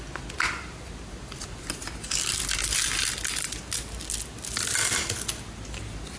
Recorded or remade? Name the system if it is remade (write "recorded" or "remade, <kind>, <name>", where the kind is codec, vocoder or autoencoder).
recorded